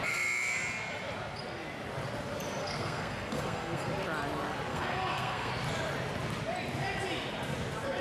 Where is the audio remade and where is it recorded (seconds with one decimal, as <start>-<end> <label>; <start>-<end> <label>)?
0.0-2.6 recorded; 2.6-3.9 remade; 3.9-4.7 recorded; 4.7-5.5 remade; 5.5-8.0 recorded